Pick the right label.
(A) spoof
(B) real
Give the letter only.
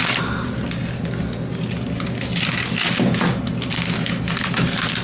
B